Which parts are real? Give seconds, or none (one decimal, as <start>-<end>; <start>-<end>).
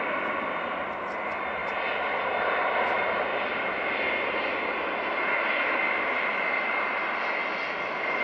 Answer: 0.0-8.2